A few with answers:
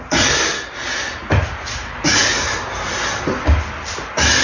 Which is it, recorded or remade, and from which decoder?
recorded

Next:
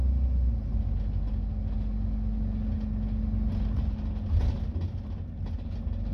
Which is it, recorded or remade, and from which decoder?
recorded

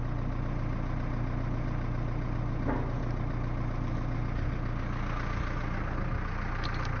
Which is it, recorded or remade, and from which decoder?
recorded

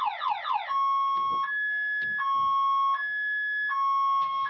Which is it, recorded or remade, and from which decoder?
recorded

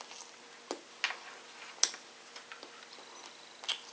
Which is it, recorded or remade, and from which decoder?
recorded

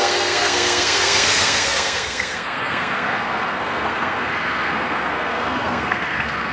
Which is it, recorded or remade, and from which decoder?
remade, codec, SNAC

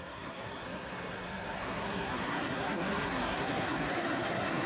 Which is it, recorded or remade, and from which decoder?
remade, codec, SNAC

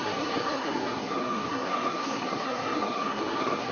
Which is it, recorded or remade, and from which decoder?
remade, codec, SNAC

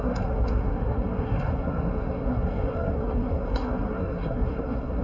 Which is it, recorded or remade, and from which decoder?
remade, codec, SNAC